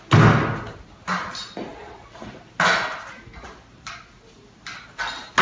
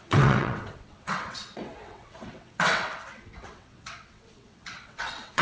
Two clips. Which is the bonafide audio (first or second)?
first